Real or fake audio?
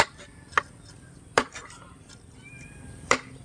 fake